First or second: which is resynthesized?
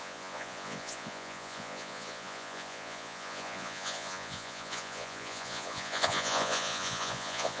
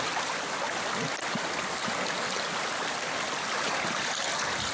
first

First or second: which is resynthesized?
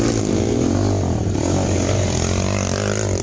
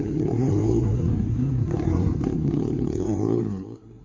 second